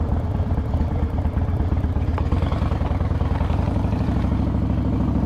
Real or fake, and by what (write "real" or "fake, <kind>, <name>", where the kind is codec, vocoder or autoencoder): fake, vocoder, BigVGAN v2